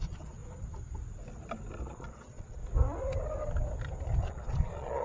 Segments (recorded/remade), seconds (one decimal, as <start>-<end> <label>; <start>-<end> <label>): 0.0-0.4 remade; 0.4-1.8 recorded; 1.8-2.6 remade; 2.6-4.2 recorded; 4.2-5.0 remade